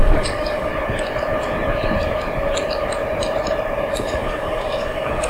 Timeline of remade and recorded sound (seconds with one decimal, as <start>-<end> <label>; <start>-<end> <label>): 0.0-0.7 remade; 0.7-3.9 recorded; 3.9-5.3 remade